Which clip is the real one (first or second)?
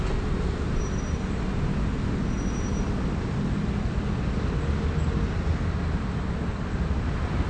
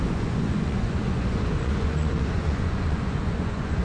first